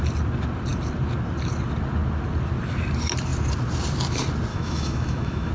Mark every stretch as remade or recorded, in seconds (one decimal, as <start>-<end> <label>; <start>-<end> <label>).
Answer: 0.0-4.5 recorded; 4.5-5.5 remade